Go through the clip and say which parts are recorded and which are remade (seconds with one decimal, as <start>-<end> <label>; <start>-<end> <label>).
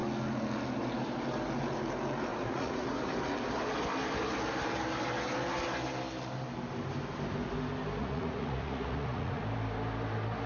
0.0-2.3 recorded; 2.3-3.1 remade; 3.1-8.0 recorded; 8.0-9.4 remade; 9.4-10.5 recorded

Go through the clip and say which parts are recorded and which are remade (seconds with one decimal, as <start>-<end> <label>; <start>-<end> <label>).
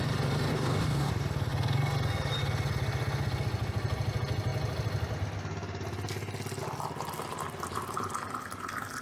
0.0-0.5 recorded; 0.5-1.1 remade; 1.1-9.0 recorded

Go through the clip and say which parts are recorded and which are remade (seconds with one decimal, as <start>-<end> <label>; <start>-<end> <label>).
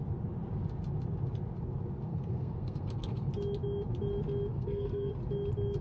0.0-2.1 recorded; 2.1-3.3 remade; 3.3-4.5 recorded; 4.5-5.1 remade; 5.1-5.8 recorded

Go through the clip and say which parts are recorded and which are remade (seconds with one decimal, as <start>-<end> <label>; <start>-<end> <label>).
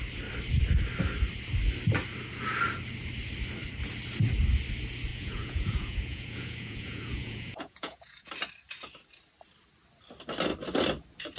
0.0-5.1 recorded; 5.1-8.3 remade; 8.3-11.4 recorded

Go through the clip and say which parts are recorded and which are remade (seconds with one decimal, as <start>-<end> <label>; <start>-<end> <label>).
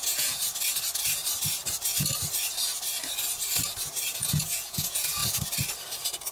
0.0-0.4 remade; 0.4-4.1 recorded; 4.1-5.2 remade; 5.2-6.3 recorded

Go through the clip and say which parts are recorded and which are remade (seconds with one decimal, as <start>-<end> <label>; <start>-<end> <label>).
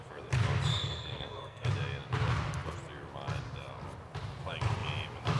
0.0-0.7 recorded; 0.7-1.7 remade; 1.7-5.4 recorded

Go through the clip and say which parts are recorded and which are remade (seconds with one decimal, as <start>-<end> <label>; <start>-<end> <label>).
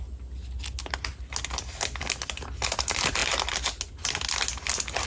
0.0-5.1 recorded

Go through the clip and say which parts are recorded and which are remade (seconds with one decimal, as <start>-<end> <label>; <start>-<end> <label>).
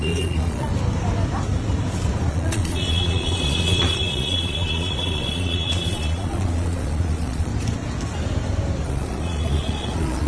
0.0-0.7 remade; 0.7-2.3 recorded; 2.3-7.5 remade; 7.5-8.9 recorded; 8.9-10.3 remade